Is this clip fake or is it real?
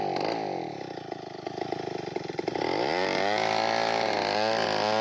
real